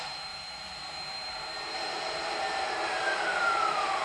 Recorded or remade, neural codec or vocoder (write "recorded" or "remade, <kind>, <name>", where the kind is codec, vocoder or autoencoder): remade, vocoder, BigVGAN v2